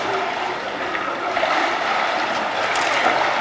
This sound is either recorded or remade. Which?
recorded